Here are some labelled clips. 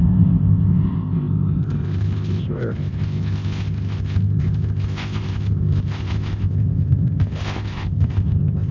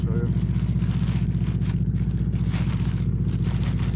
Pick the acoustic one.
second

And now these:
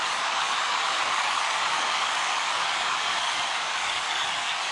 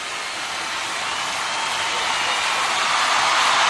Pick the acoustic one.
second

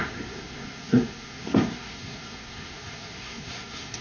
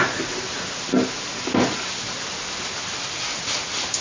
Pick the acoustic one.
second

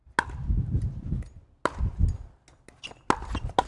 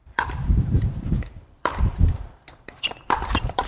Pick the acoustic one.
first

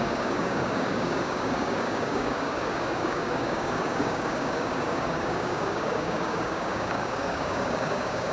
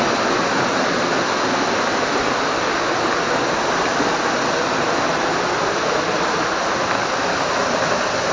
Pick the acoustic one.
second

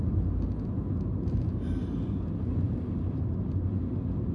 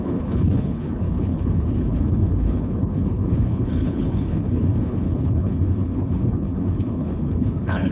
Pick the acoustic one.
first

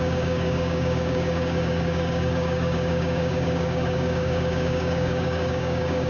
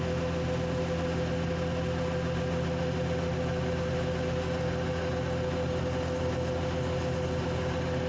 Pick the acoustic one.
second